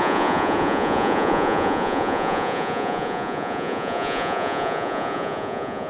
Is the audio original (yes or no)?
no